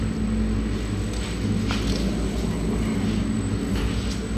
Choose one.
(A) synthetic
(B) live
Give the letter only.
B